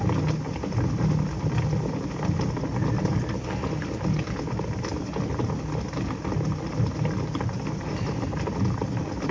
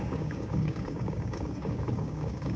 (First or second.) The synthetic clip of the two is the second